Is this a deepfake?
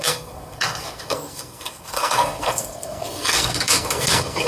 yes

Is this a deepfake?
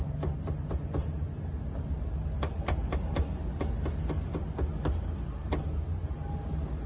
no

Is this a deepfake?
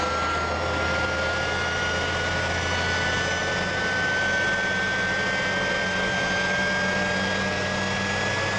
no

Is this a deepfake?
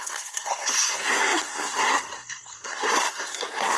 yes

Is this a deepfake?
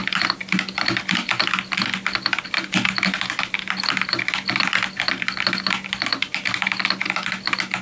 no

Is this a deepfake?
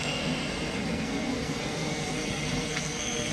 yes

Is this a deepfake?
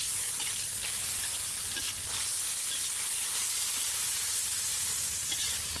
no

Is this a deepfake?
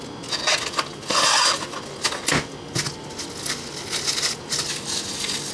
no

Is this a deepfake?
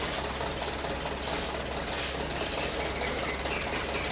no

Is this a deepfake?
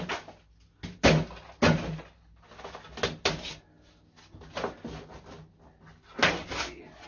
no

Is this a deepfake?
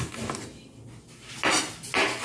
no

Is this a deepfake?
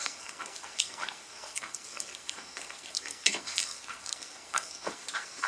yes